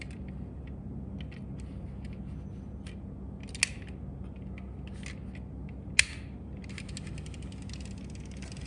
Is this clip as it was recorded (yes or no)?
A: yes